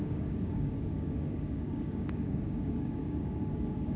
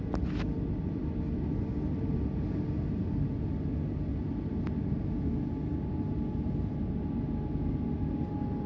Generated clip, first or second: first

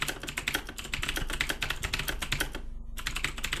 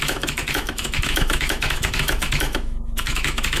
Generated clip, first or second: second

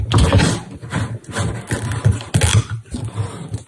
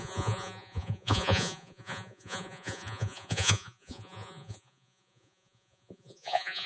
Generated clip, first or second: second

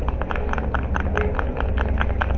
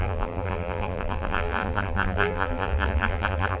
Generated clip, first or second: second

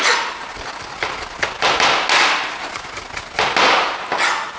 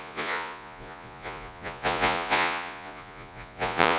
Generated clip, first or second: second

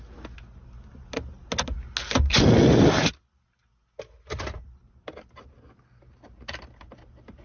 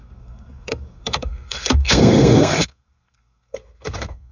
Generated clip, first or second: second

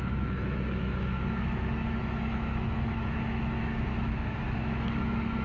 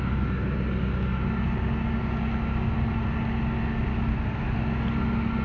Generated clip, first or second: first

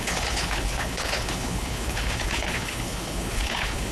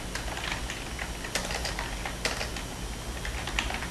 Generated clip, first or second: first